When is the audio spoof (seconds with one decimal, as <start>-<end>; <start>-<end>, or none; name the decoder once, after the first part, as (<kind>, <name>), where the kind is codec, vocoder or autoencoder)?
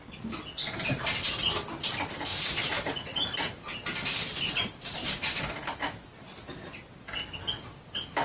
0.6-1.3 (vocoder, BigVGAN v2); 2.3-6.1